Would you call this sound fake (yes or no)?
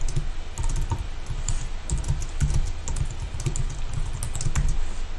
no